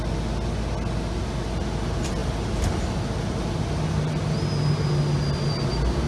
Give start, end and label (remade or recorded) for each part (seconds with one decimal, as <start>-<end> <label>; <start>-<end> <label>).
0.0-6.1 recorded